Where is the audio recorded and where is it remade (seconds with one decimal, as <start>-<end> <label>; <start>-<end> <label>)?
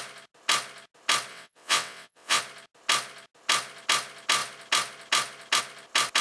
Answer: 0.0-1.3 recorded; 1.3-2.4 remade; 2.4-6.2 recorded